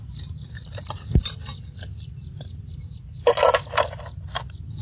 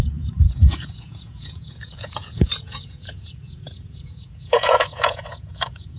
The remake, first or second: second